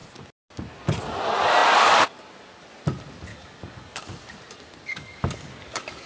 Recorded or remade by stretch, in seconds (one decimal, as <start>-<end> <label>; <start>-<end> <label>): 0.0-3.3 recorded; 3.3-4.0 remade; 4.0-4.9 recorded; 4.9-6.1 remade